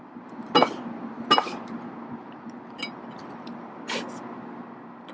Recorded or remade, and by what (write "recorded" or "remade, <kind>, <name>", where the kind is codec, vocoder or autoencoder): recorded